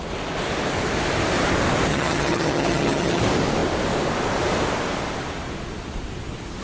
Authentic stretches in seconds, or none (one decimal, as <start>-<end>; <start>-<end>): 0.0-1.9; 3.2-6.6